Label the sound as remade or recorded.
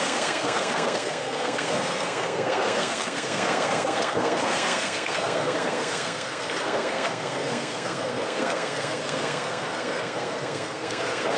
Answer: remade